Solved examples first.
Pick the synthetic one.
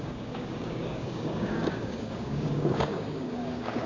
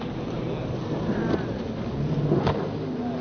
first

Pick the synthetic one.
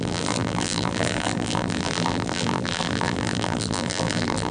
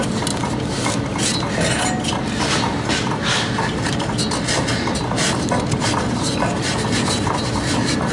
first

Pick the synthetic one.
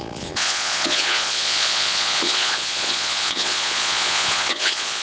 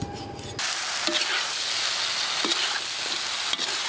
first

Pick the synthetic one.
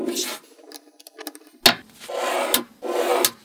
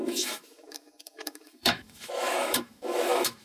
second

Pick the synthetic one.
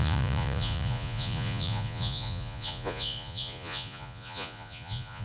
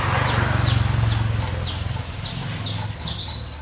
first